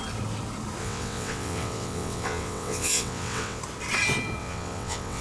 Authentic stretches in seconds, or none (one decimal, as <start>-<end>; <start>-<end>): 0.0-0.8; 3.6-4.4